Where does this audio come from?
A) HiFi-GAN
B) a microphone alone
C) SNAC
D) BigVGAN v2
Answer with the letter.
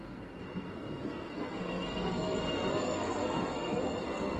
C